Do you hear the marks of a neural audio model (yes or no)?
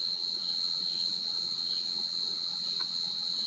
yes